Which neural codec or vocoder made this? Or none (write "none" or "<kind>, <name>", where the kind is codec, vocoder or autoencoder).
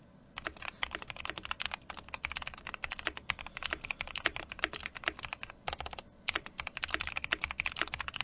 none